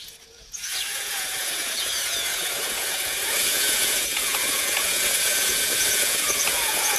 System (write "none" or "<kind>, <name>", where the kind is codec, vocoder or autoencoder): vocoder, Vocos